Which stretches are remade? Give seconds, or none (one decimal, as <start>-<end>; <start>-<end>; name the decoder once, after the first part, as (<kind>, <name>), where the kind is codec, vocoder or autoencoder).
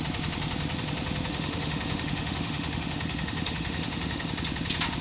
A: 1.3-4.3 (autoencoder, DAC-VAE)